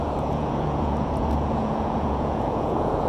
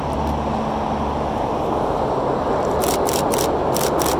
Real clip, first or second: second